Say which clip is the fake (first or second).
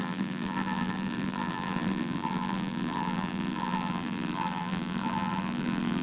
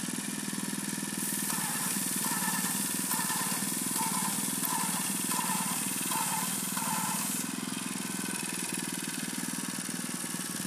first